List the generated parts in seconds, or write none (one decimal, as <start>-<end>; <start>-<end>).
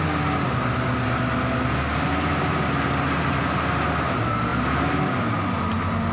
none